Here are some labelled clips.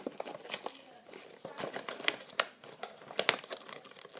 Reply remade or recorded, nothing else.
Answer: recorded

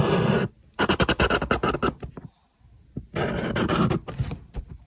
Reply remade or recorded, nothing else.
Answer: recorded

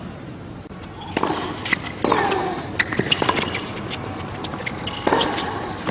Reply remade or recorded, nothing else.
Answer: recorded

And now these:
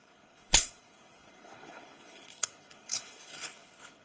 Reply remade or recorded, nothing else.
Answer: remade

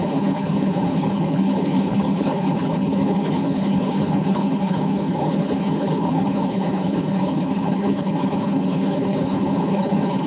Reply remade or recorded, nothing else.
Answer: remade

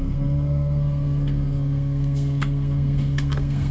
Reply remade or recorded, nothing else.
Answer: remade